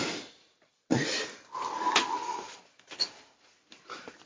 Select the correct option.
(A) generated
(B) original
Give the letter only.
B